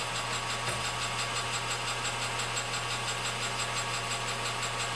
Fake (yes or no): no